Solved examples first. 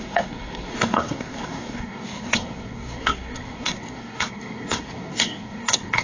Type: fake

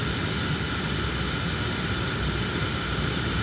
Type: real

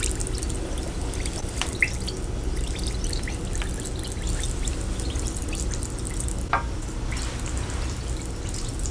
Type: real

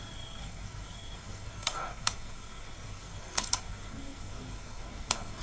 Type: fake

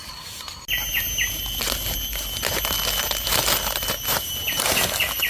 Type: real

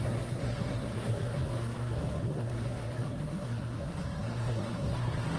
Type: fake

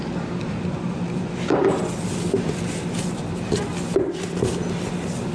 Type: real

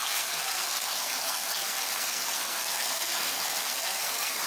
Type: fake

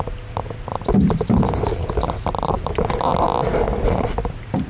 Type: real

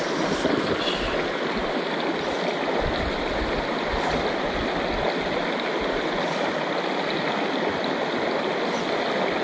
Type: real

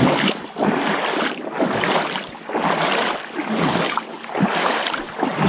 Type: real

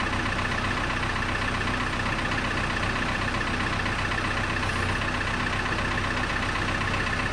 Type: real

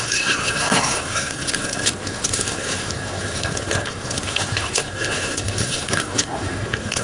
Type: fake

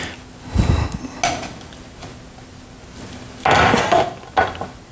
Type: real